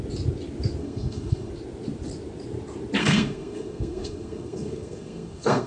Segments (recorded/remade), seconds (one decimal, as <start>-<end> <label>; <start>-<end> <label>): 0.0-0.8 recorded; 0.8-1.5 remade; 1.5-3.0 recorded; 3.0-5.7 remade